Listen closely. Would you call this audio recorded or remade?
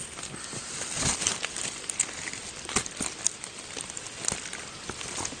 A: recorded